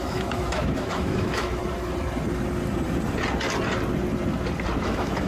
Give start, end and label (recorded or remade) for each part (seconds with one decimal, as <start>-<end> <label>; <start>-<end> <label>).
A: 0.0-1.6 remade; 1.6-4.8 recorded; 4.8-5.3 remade